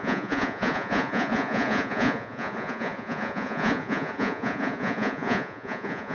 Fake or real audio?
fake